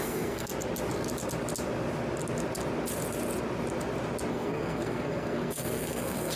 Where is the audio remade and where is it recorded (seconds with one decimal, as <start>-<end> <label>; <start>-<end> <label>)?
0.0-0.5 remade; 0.5-4.3 recorded; 4.3-6.4 remade